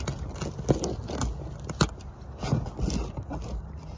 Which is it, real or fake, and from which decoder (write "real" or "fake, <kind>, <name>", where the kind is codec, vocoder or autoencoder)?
real